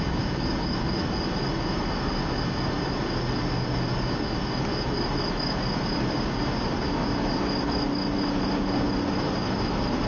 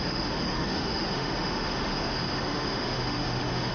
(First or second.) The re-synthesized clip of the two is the second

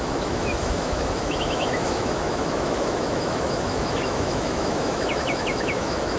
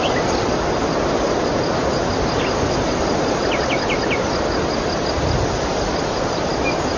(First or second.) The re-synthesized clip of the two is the first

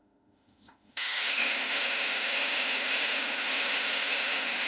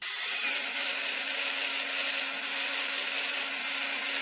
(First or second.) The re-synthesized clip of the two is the first